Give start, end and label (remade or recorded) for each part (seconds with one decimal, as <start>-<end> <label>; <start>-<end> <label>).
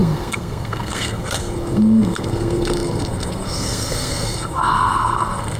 0.0-5.6 remade